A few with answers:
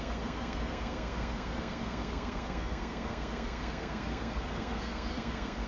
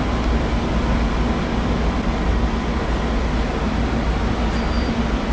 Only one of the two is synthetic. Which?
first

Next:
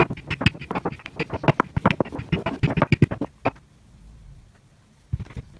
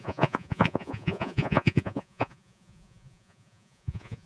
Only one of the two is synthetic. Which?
second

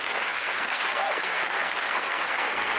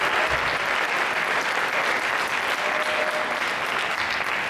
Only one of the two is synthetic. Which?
first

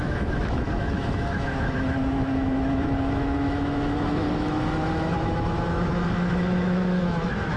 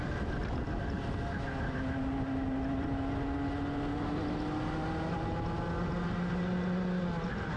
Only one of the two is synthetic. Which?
first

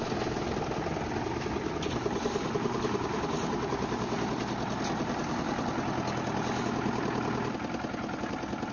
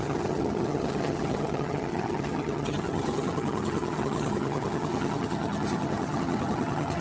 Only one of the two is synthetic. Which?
second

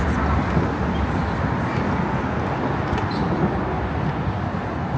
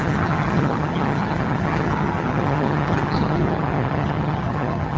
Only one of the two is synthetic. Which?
second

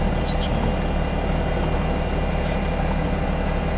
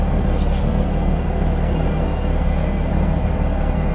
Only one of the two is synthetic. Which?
second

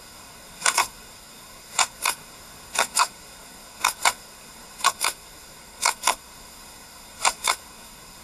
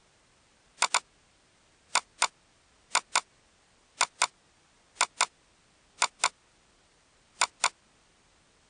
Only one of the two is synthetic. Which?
first